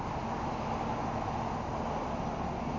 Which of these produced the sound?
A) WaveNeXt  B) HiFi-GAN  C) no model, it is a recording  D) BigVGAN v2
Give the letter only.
C